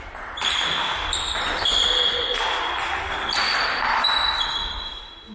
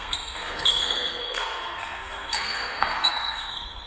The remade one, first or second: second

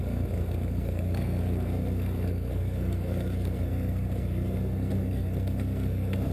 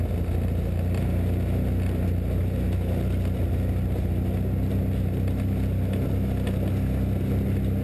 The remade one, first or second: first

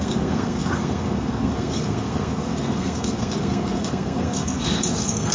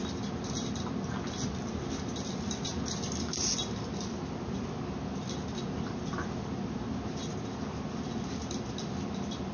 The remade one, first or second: first